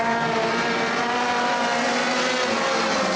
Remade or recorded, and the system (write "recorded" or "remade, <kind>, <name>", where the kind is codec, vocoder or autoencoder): recorded